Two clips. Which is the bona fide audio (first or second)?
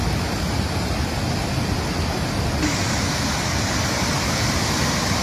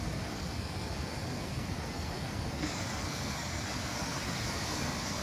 first